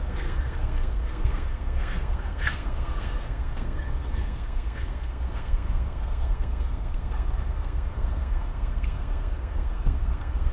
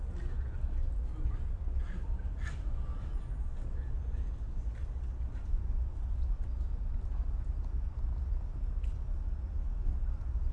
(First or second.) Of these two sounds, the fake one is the first